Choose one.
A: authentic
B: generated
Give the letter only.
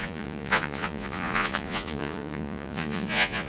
B